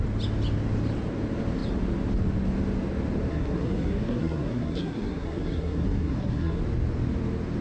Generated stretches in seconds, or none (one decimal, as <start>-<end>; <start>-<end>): 3.3-6.6

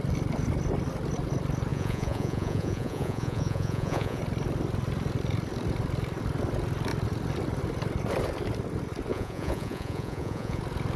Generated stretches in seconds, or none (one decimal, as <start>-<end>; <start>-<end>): 1.7-4.2; 9.1-10.6